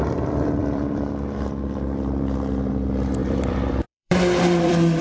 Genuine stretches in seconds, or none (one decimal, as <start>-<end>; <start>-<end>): none